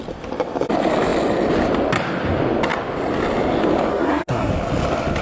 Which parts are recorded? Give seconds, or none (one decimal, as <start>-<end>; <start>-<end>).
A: 0.0-3.9; 4.5-5.2